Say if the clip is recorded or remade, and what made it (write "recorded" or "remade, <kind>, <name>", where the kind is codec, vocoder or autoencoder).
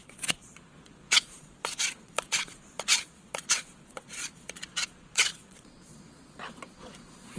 remade, vocoder, Vocos